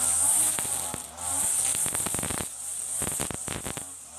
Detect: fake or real real